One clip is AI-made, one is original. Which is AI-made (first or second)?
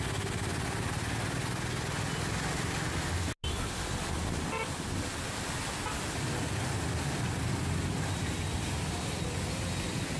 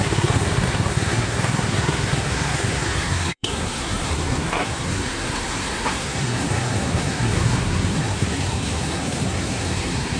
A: second